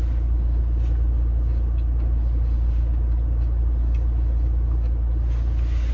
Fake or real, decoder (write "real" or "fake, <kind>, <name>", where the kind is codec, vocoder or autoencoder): real